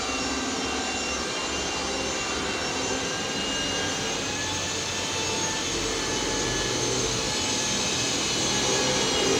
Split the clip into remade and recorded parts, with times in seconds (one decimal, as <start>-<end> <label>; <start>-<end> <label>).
0.0-9.4 recorded